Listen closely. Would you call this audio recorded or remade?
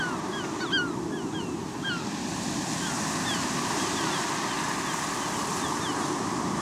recorded